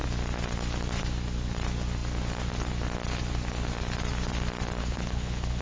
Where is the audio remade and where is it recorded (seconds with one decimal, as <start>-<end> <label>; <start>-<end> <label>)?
0.0-4.8 recorded; 4.8-5.6 remade